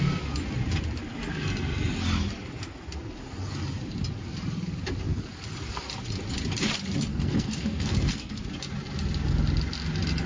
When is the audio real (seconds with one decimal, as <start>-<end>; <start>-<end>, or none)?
0.0-7.1; 8.4-10.3